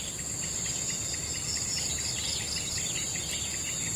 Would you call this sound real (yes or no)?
yes